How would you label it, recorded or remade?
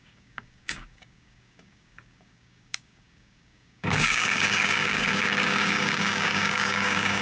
remade